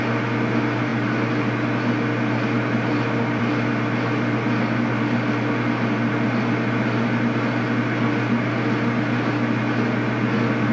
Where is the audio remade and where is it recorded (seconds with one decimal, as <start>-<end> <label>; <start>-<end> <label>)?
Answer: 0.0-10.7 recorded